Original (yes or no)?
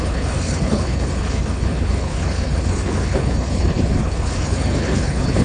no